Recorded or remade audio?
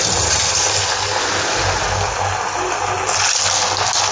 recorded